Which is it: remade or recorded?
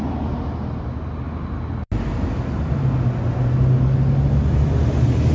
recorded